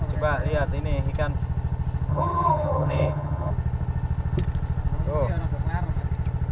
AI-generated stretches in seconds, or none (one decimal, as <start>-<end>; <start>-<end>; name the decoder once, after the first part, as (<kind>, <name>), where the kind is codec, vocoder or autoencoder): 2.1-3.5 (vocoder, HiFi-GAN)

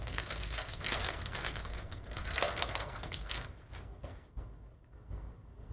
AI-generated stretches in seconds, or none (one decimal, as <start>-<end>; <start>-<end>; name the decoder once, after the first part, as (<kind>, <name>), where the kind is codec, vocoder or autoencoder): 0.0-5.7 (codec, SNAC)